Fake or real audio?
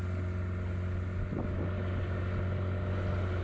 real